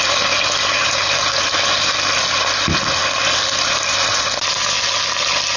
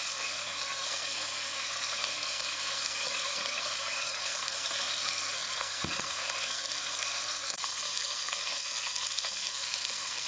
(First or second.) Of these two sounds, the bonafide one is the first